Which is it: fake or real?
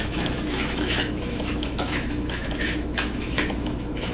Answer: fake